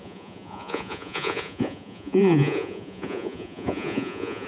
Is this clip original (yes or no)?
no